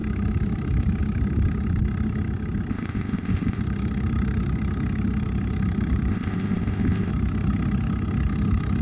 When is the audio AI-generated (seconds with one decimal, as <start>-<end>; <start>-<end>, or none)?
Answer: 2.7-3.6; 6.1-7.1